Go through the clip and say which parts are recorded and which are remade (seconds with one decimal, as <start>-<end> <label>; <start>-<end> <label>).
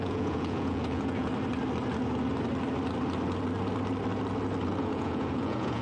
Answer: 0.0-1.3 remade; 1.3-4.8 recorded; 4.8-5.8 remade